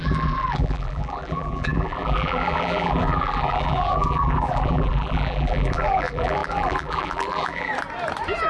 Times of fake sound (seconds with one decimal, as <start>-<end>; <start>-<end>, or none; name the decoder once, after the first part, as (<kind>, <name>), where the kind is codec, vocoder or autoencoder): 0.0-7.7 (vocoder, BigVGAN v2)